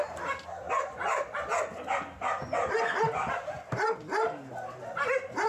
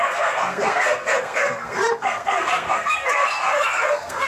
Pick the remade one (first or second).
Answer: second